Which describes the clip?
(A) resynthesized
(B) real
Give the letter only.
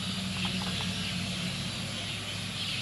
B